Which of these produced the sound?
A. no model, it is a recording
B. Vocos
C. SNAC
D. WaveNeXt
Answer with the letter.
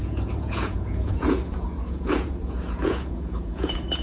B